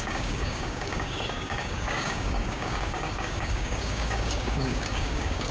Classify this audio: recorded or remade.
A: remade